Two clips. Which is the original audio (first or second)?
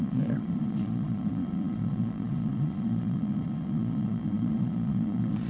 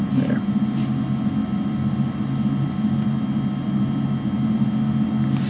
second